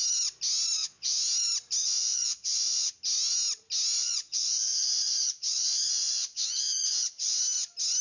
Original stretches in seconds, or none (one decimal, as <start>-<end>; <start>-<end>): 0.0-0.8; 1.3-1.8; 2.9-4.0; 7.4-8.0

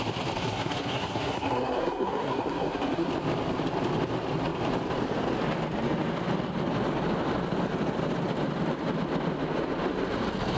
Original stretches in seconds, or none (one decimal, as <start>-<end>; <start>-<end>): 0.0-0.4; 3.1-10.6

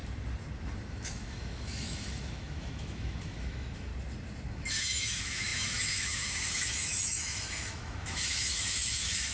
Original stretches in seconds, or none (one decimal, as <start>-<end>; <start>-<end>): 0.0-0.9; 3.9-4.5

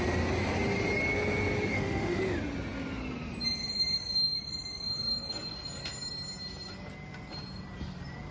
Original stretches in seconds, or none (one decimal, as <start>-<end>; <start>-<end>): 0.0-1.7; 2.2-8.3

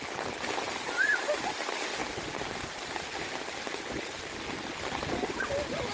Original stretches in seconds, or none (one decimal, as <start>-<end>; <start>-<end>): 0.0-5.9

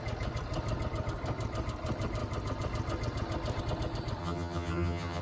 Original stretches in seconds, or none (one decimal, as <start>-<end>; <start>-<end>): 0.0-4.2

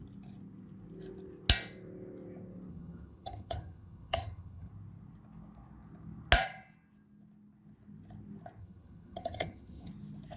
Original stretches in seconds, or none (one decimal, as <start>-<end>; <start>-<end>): 0.0-2.7; 4.7-8.6; 9.9-10.4